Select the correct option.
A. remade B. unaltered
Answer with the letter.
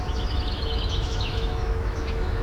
A